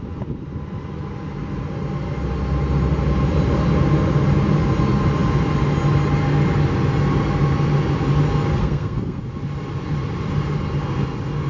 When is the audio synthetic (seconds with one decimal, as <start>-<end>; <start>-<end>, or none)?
8.5-9.2